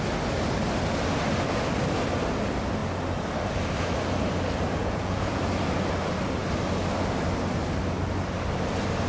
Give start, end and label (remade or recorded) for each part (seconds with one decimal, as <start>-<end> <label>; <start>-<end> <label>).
0.0-4.8 recorded; 4.8-5.4 remade; 5.4-9.1 recorded